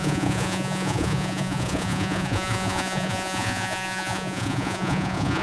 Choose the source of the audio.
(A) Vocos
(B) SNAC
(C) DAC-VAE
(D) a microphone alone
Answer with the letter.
A